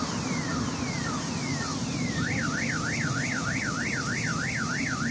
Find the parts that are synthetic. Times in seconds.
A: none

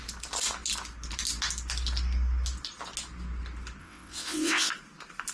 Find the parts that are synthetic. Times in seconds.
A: 3.8-4.7 (vocoder, WaveNeXt)

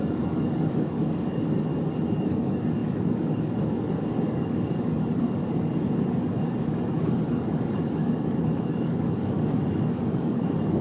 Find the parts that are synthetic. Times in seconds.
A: 0.0-1.7 (codec, DAC); 2.2-5.4; 6.1-10.8